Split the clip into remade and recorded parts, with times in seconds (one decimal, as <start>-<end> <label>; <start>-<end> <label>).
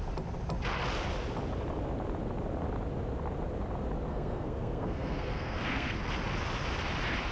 0.0-4.1 recorded; 4.1-6.0 remade; 6.0-7.3 recorded